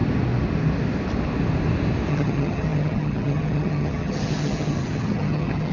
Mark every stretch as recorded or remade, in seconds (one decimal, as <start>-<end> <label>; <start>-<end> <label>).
0.0-2.1 recorded; 2.1-5.7 remade